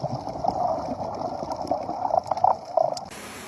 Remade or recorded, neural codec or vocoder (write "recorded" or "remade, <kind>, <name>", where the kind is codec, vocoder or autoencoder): recorded